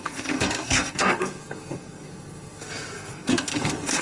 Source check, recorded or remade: remade